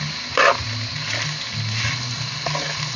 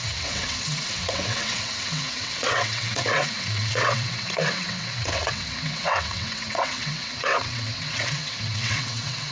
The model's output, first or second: second